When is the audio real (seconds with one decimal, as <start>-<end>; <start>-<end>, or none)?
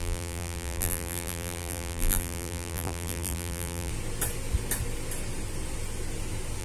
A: 3.9-6.6